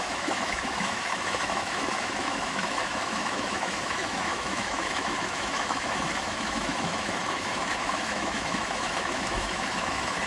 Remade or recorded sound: remade